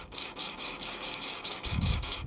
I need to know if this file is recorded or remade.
remade